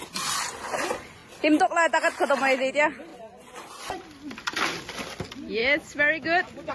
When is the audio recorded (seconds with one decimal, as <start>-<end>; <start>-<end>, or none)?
0.0-3.1; 4.8-6.7